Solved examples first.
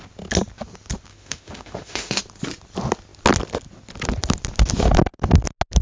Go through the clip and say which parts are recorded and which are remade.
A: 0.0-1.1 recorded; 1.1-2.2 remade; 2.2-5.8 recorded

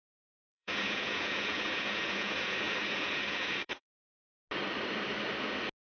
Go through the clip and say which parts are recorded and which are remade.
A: 0.0-0.4 recorded; 0.4-3.9 remade; 3.9-5.9 recorded